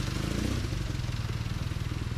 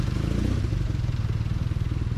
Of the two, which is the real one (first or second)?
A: first